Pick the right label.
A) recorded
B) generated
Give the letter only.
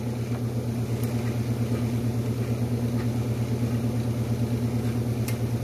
A